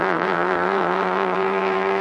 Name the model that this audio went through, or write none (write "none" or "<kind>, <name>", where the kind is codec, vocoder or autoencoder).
vocoder, BigVGAN v2